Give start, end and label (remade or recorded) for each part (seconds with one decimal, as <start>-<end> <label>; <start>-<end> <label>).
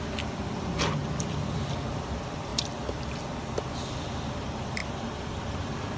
0.0-2.5 remade; 2.5-3.7 recorded; 3.7-6.0 remade